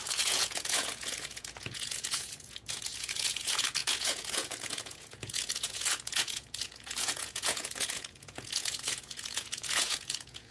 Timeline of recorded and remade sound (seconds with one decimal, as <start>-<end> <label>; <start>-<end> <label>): 0.0-10.5 remade